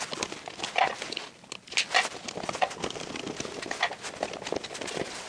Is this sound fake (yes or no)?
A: no